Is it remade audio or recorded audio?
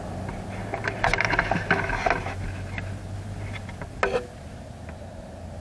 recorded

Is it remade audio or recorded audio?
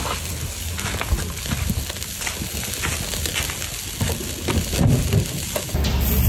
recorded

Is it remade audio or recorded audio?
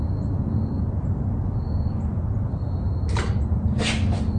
recorded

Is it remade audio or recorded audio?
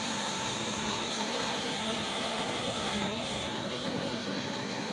remade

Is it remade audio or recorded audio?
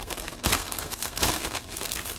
remade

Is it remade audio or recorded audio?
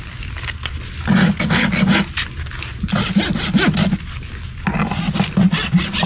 recorded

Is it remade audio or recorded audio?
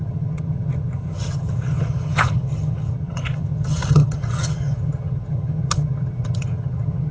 remade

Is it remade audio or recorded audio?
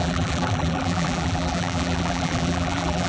remade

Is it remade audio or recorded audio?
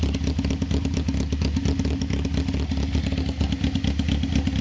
recorded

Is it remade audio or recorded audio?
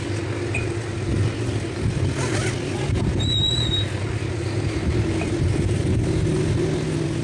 recorded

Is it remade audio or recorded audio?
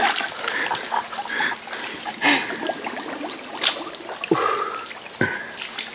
recorded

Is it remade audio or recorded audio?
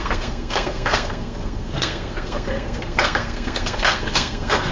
remade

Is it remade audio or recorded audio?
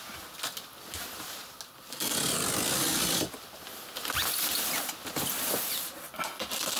recorded